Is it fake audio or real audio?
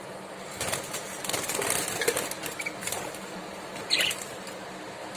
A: real